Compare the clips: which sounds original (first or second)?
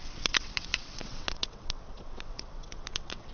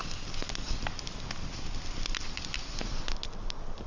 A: second